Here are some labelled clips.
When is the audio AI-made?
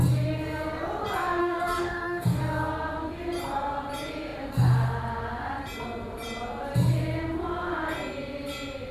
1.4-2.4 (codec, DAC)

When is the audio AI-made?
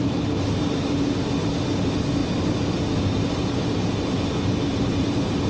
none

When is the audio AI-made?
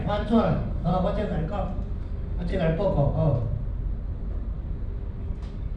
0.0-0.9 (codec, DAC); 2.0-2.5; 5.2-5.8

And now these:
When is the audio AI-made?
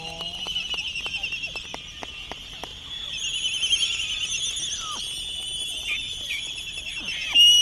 none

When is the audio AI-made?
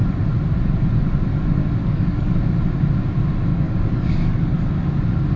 1.8-2.4 (codec, DAC); 3.5-4.7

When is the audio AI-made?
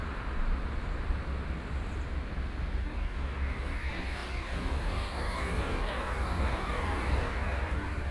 2.8-8.1 (codec, DAC)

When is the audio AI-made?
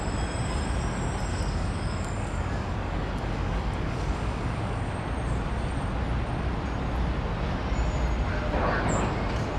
1.3-4.9 (codec, DAC)